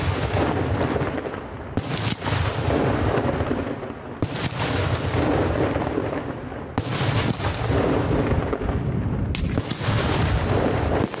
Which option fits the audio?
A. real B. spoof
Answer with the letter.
A